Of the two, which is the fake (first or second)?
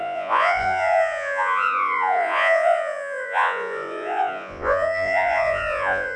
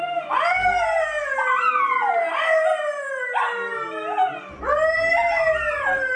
first